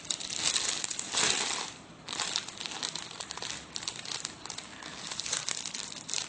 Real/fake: real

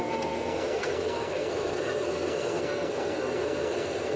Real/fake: fake